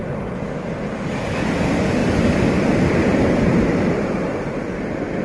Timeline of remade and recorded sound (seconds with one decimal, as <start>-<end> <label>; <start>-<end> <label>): 0.0-5.2 recorded